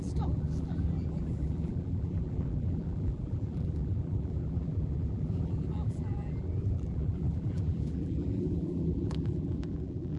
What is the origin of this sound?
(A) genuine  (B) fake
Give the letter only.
B